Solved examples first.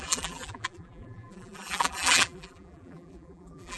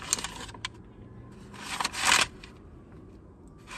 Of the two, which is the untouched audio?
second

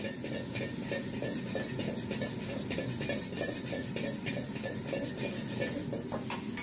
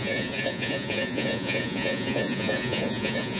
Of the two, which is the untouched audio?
first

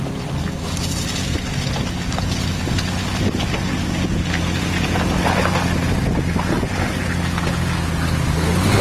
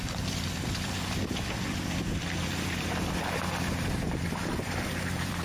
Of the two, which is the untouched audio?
first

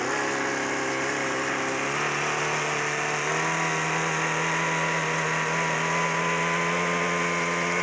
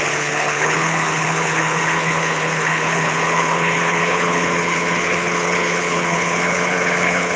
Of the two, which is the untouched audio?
first